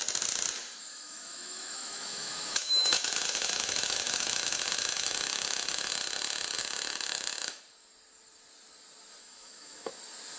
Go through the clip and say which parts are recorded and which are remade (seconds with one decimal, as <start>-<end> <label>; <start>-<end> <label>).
0.0-0.9 recorded; 0.9-5.9 remade; 5.9-6.6 recorded; 6.6-7.6 remade; 7.6-9.2 recorded; 9.2-10.0 remade; 10.0-10.4 recorded